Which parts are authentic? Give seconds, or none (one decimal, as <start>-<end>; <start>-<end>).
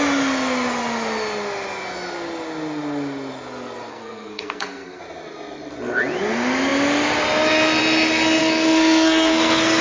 0.0-3.9; 5.0-8.4